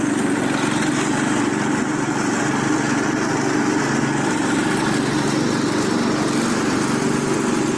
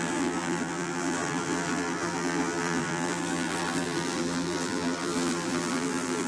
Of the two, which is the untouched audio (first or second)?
first